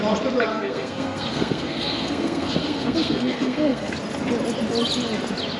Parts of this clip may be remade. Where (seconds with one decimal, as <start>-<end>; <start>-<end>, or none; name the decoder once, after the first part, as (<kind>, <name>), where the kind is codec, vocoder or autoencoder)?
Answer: 0.5-3.9 (codec, SNAC)